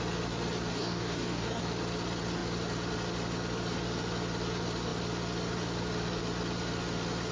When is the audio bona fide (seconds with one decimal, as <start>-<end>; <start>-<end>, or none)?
0.0-0.7; 1.6-7.3